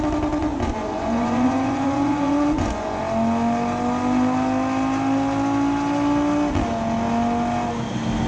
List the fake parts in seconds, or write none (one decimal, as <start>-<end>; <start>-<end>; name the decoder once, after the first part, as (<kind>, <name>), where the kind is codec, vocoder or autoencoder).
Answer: 0.4-3.0 (vocoder, Vocos)